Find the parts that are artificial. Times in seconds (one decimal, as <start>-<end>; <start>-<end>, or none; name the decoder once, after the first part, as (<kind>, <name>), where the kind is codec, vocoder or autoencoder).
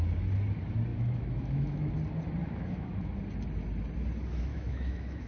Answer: 0.9-1.9 (autoencoder, DAC-VAE); 2.4-3.1; 4.5-5.3